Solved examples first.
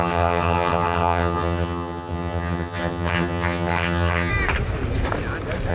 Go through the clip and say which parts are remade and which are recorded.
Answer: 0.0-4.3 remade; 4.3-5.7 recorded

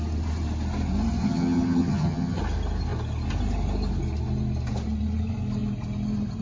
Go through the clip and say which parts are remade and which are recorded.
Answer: 0.0-1.2 recorded; 1.2-2.4 remade; 2.4-6.4 recorded

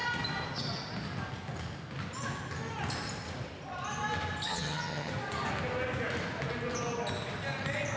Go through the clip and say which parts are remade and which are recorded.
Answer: 0.0-4.5 recorded; 4.5-5.1 remade; 5.1-8.0 recorded